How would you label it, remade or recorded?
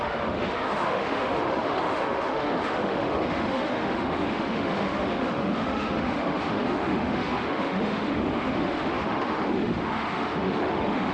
remade